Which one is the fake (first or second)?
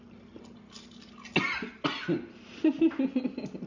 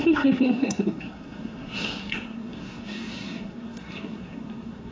second